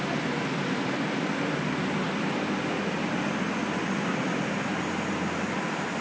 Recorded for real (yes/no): no